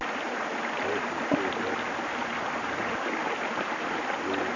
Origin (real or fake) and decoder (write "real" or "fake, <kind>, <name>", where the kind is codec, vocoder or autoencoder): fake, vocoder, BigVGAN v2